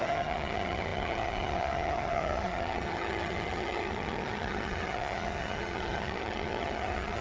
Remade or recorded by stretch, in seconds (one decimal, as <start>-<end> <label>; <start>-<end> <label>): 0.0-7.2 remade